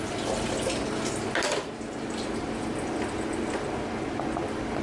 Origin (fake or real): real